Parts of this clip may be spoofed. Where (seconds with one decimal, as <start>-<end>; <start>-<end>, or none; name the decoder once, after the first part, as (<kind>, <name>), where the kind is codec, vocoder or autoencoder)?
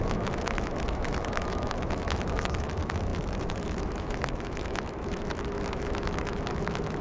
0.0-7.0 (autoencoder, DAC-VAE)